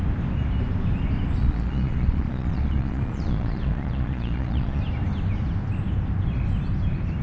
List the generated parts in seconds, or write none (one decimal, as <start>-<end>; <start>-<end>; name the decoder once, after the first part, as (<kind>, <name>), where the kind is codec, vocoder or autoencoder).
1.4-4.8 (vocoder, Vocos)